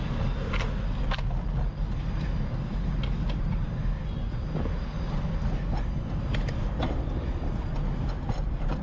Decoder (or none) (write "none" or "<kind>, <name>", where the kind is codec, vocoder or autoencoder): none